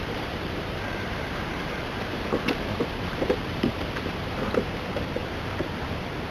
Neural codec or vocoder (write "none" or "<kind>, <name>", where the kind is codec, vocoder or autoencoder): vocoder, BigVGAN v2